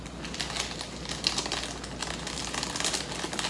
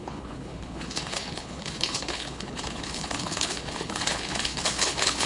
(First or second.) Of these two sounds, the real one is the first